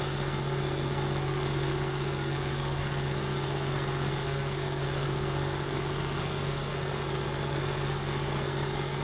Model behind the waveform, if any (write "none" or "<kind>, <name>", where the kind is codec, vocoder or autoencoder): codec, SNAC